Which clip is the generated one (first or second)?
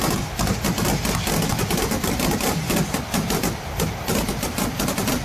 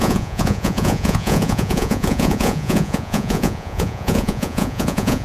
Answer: second